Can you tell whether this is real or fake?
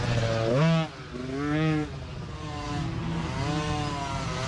real